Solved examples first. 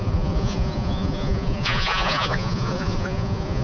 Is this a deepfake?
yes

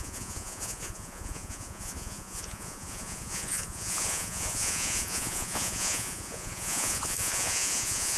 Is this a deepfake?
yes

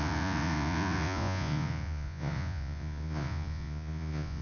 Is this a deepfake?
yes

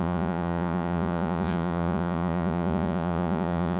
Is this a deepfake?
yes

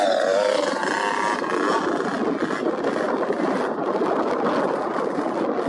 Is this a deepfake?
no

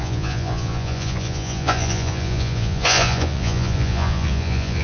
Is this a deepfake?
yes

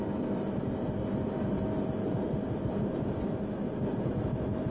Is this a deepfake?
no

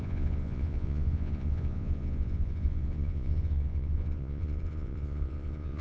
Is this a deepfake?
yes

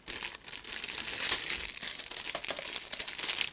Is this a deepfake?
no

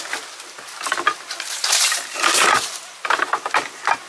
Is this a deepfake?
no